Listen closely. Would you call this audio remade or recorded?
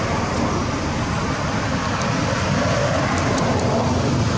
recorded